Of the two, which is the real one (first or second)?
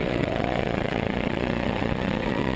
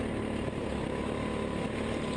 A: second